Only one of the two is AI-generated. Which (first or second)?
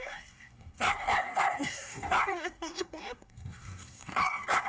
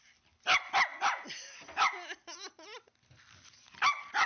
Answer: first